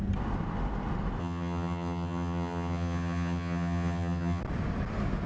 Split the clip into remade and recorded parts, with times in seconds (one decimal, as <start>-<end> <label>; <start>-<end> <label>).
0.0-1.2 recorded; 1.2-4.4 remade; 4.4-5.3 recorded